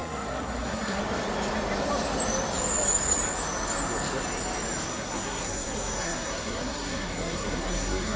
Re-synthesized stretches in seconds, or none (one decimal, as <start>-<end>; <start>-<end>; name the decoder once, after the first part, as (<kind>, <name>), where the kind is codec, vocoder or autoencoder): 0.0-1.0 (codec, SNAC); 4.9-8.2

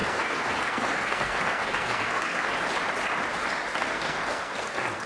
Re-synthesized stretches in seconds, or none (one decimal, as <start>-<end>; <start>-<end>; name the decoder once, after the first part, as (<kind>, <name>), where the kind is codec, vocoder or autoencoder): 0.0-2.5 (codec, SNAC); 3.7-5.1

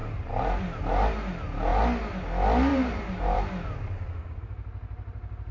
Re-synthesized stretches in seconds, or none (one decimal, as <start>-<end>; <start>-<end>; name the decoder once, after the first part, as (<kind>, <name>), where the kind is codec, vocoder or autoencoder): 0.0-0.8 (vocoder, BigVGAN v2); 2.7-4.1

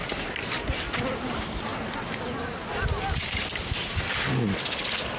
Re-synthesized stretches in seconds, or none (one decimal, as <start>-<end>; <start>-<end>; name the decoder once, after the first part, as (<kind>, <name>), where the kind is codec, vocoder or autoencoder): none